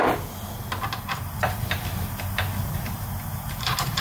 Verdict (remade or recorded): recorded